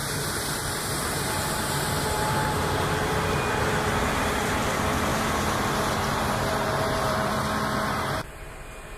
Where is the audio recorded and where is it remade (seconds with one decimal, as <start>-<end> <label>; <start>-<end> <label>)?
0.0-2.7 remade; 2.7-5.1 recorded; 5.1-7.3 remade; 7.3-9.0 recorded